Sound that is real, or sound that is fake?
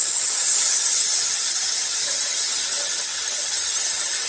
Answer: fake